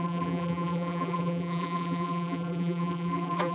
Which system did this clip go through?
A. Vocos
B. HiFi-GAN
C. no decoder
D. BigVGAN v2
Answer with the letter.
D